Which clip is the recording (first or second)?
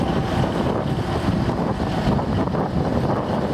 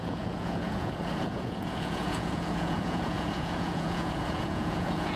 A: first